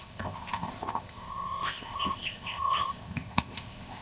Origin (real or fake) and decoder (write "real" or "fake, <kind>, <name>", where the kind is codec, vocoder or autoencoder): fake, codec, ZipCodec